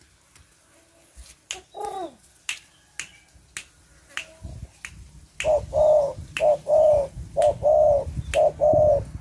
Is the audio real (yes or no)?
yes